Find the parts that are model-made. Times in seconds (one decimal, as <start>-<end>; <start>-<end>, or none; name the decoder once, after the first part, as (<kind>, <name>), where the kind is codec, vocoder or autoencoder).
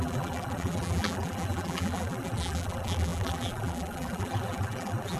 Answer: 0.0-5.2 (vocoder, BigVGAN v2)